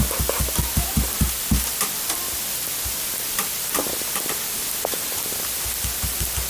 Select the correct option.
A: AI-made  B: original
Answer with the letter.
B